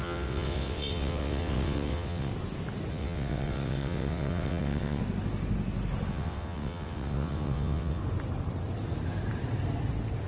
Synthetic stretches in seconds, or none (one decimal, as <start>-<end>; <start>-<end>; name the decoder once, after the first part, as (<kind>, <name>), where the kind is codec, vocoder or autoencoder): 0.0-2.3 (vocoder, WaveNeXt); 2.9-5.0; 6.1-8.0